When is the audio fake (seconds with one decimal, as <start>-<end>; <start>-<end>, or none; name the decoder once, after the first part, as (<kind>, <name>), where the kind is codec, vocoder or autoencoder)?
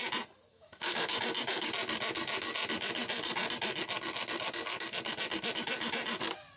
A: 0.5-1.2 (autoencoder, DAC-VAE)